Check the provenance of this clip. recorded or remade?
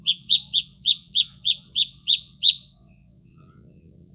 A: remade